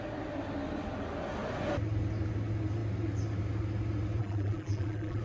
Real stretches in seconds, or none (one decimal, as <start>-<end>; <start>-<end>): 0.0-4.2